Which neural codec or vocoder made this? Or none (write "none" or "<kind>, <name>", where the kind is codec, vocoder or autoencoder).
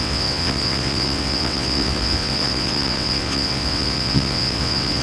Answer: vocoder, WaveNeXt